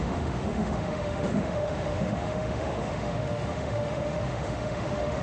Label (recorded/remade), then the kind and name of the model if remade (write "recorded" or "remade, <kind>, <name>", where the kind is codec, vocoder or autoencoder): remade, autoencoder, DAC-VAE